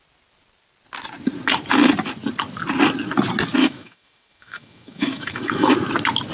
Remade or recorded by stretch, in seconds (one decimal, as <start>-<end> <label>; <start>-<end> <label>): 0.0-3.6 recorded; 3.6-5.7 remade; 5.7-6.3 recorded